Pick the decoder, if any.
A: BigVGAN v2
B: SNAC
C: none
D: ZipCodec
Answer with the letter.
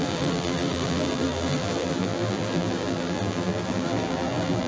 A